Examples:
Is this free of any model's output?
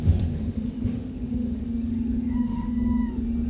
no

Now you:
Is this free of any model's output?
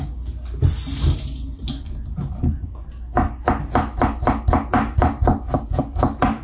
yes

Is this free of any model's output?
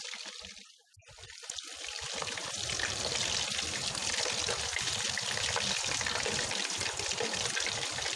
yes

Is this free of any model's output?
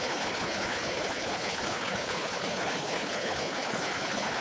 no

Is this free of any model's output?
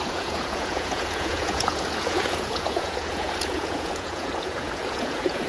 no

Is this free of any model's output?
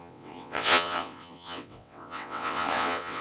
no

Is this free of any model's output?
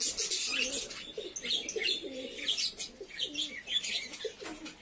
yes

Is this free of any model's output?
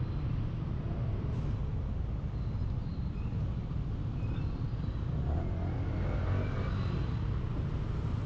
yes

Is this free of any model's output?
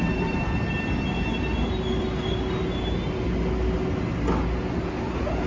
yes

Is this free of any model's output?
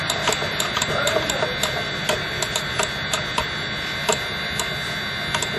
yes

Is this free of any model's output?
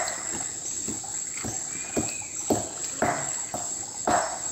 yes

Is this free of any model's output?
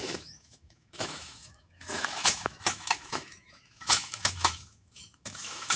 no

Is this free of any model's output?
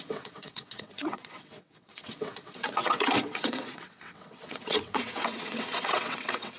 no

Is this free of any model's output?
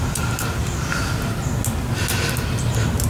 yes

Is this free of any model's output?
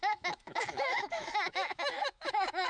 no